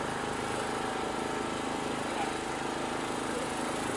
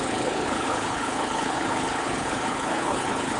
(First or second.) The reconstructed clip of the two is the second